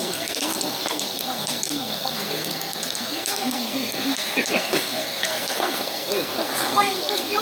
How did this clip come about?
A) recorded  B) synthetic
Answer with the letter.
B